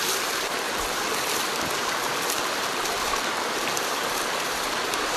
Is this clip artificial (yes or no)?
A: yes